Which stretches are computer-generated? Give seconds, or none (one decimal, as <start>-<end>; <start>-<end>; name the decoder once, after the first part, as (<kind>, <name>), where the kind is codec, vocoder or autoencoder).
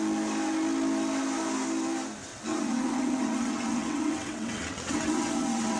2.3-5.8 (vocoder, WaveNeXt)